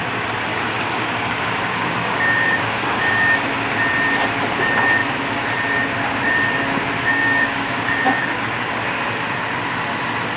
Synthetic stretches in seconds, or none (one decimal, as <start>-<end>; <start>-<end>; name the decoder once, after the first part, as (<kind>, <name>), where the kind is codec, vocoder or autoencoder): 0.5-3.4 (codec, DAC); 7.1-9.0